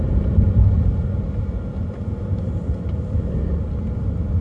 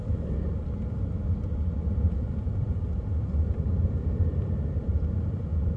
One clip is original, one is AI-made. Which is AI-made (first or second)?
second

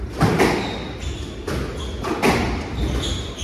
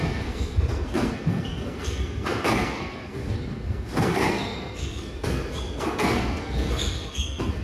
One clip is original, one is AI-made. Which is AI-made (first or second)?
second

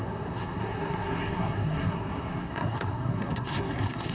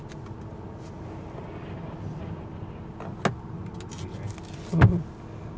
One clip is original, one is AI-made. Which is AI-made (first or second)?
first